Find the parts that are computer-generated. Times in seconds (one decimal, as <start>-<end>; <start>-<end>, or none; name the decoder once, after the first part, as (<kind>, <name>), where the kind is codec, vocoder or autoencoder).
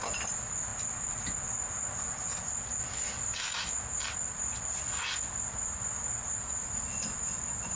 none